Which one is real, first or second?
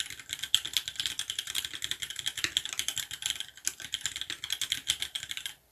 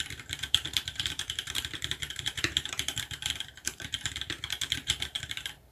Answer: first